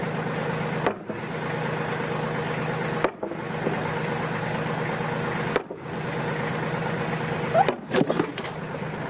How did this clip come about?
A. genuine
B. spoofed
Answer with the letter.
A